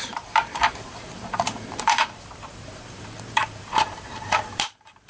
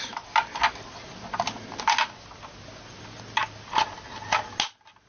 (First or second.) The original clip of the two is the second